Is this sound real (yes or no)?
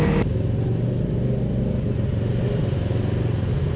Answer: yes